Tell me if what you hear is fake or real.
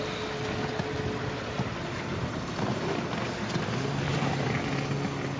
real